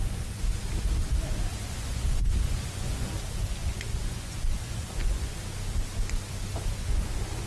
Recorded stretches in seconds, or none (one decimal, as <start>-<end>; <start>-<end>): 0.6-1.5; 3.2-3.6; 5.4-6.7